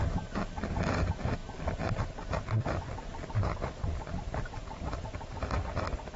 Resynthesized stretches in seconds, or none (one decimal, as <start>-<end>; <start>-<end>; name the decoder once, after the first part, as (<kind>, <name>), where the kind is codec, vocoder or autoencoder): none